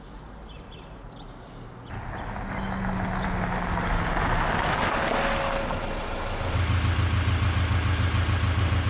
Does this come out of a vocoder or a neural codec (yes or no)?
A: no